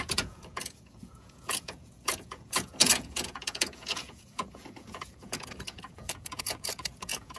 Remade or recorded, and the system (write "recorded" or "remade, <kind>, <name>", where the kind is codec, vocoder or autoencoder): remade, vocoder, Vocos